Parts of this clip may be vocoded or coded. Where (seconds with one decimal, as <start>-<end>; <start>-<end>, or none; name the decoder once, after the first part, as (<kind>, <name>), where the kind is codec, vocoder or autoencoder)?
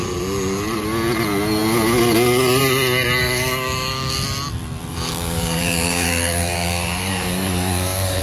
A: 3.2-4.1 (codec, DAC); 4.9-8.2